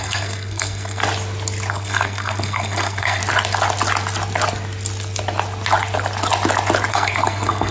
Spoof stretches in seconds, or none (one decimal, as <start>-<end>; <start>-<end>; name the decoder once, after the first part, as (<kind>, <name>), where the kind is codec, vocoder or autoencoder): 0.0-1.0 (codec, SNAC); 1.7-3.2; 6.9-7.7